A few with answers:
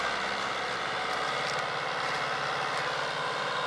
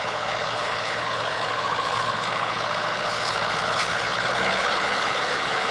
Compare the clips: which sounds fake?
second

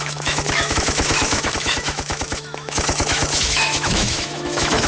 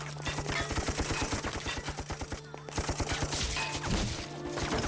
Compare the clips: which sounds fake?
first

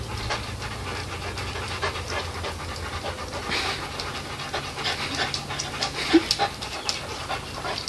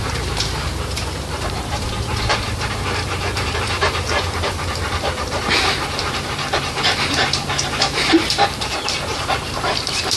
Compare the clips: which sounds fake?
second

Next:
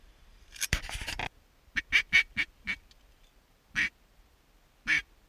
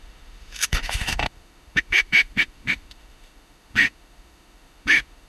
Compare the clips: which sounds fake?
second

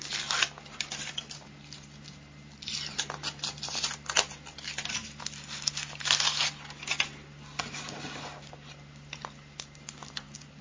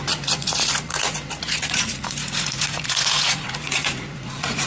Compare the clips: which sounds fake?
second